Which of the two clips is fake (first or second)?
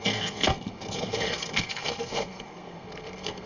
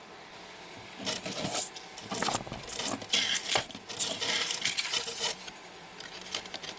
first